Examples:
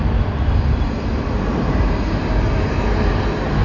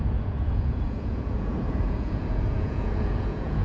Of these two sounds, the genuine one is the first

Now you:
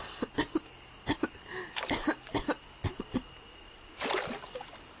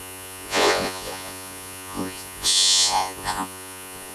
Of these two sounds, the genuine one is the first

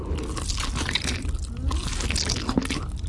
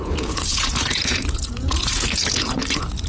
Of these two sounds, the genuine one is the first